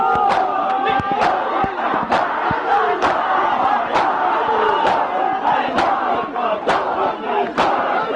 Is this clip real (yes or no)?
yes